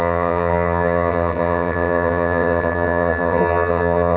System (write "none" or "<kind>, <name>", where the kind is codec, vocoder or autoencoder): vocoder, HiFi-GAN